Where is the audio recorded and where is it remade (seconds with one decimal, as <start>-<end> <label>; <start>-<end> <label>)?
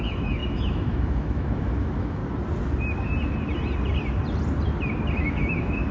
0.0-2.2 remade; 2.2-5.2 recorded; 5.2-5.9 remade